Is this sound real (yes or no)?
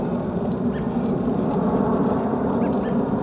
yes